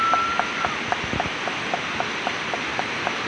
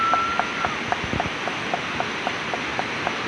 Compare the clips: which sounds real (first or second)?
second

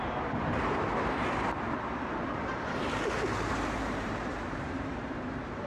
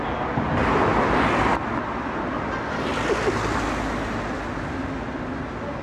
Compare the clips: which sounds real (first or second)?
second